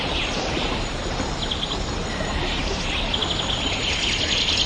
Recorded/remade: recorded